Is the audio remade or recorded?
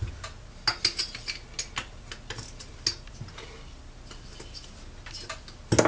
recorded